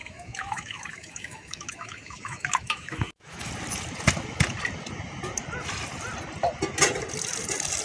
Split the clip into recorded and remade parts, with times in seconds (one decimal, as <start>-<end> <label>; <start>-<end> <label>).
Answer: 0.0-3.5 remade; 3.5-7.8 recorded